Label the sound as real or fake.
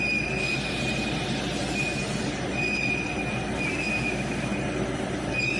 real